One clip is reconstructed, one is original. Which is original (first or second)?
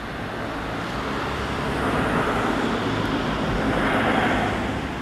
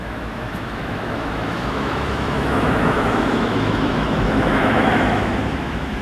first